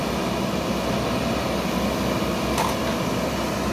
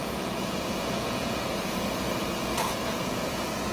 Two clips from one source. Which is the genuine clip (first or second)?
first